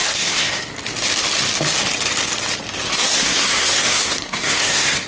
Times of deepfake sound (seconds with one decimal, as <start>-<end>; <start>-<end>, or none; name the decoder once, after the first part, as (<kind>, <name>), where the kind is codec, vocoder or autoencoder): 0.0-0.7 (codec, SNAC); 2.9-5.1